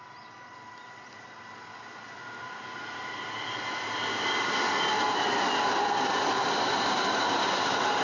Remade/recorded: recorded